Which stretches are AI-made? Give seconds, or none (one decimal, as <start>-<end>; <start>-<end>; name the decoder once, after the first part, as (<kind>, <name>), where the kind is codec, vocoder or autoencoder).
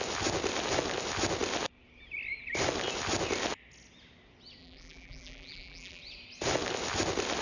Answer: 4.6-6.0 (vocoder, BigVGAN v2)